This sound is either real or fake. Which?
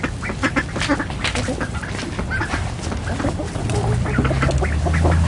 real